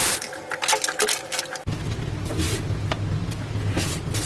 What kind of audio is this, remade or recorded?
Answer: recorded